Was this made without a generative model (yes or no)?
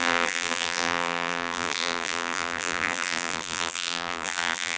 no